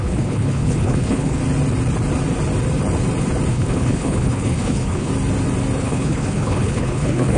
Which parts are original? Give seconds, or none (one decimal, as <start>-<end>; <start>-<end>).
1.4-3.5; 5.1-5.8